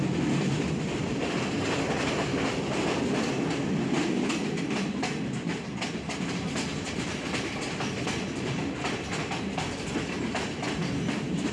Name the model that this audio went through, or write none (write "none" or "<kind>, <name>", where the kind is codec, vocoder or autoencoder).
none